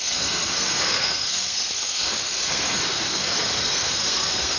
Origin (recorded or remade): remade